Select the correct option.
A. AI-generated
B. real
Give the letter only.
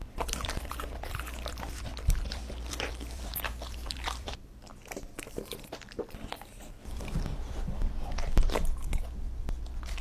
A